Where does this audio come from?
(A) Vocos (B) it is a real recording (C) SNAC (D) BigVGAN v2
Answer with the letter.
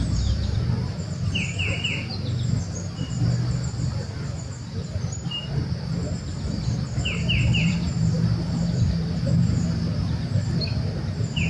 D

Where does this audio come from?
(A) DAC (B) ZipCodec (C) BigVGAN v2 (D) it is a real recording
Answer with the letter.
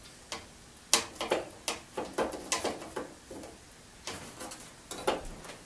D